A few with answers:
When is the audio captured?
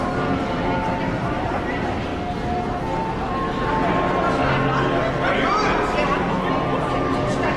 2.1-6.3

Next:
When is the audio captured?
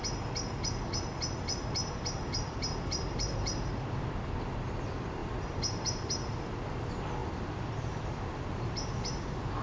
0.0-1.8; 3.7-5.2; 6.8-7.2; 8.3-9.6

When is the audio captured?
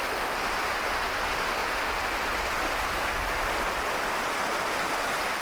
0.0-5.4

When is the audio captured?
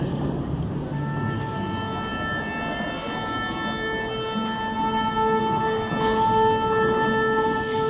0.0-7.9